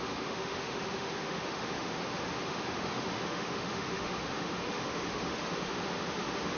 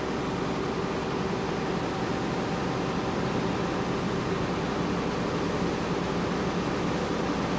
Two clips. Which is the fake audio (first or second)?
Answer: first